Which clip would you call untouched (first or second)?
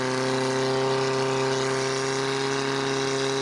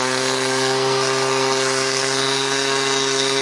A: first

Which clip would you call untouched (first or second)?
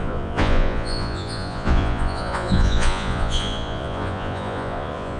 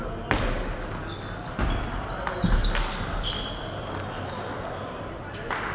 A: second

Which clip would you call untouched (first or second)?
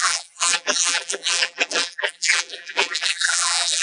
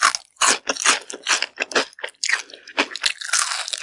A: second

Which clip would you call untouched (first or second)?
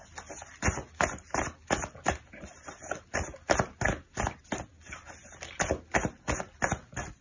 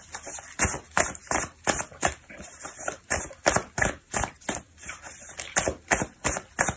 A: first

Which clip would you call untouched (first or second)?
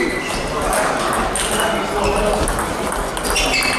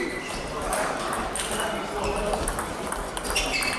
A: first